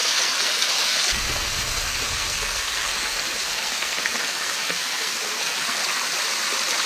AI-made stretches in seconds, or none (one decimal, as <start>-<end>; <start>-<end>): 0.0-5.8